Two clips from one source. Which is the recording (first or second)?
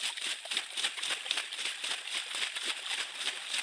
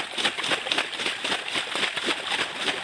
second